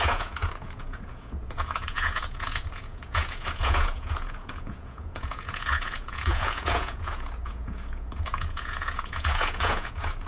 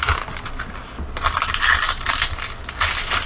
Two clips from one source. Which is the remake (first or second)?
first